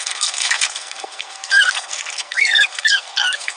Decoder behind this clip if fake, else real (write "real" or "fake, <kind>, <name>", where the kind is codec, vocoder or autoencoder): fake, codec, SNAC